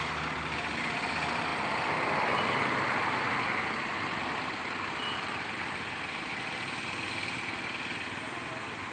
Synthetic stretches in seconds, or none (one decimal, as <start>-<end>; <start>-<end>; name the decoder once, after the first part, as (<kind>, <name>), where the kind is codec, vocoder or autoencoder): none